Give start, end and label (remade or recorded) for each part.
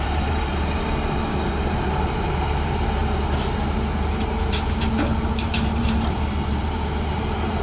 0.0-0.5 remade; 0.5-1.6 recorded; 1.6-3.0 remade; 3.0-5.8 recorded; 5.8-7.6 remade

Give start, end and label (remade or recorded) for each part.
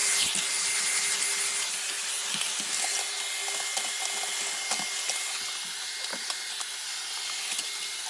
0.0-8.1 recorded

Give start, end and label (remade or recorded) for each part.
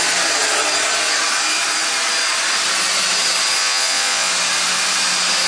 0.0-3.6 recorded; 3.6-4.3 remade; 4.3-5.5 recorded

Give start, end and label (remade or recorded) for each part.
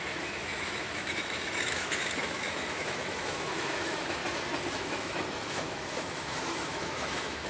0.0-4.2 remade; 4.2-4.7 recorded; 4.7-7.5 remade